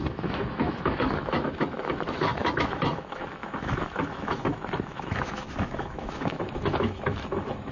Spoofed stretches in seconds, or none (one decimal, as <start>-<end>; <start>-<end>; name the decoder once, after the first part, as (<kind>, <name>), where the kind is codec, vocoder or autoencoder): 0.0-7.7 (autoencoder, DAC-VAE)

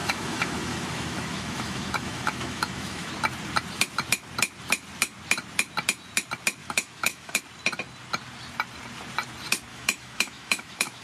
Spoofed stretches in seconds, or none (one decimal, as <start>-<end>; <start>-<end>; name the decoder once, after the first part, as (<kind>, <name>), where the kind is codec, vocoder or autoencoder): 0.0-3.1 (autoencoder, DAC-VAE); 6.6-7.4; 9.7-11.0

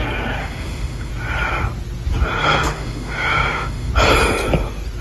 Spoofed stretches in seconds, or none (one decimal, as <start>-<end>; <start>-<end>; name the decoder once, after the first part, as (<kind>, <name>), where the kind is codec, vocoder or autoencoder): 0.4-1.1 (autoencoder, DAC-VAE); 2.4-3.9

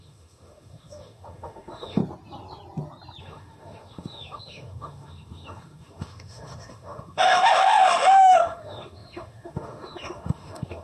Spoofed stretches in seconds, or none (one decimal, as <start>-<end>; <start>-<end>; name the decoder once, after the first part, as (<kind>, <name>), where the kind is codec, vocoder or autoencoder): 0.0-2.0 (autoencoder, DAC-VAE); 3.2-10.8

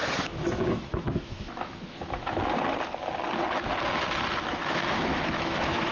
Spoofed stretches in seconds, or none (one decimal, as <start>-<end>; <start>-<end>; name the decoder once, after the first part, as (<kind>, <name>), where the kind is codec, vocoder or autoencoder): 0.0-2.4 (autoencoder, DAC-VAE); 4.6-5.9

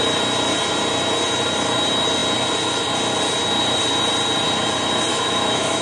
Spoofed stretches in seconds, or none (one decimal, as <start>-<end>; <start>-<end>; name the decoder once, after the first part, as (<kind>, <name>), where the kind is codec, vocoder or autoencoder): 5.1-5.8 (autoencoder, DAC-VAE)

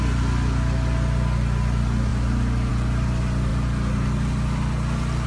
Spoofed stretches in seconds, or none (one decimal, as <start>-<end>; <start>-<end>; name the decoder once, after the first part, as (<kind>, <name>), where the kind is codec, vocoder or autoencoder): none